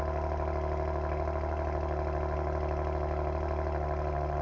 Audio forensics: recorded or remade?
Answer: recorded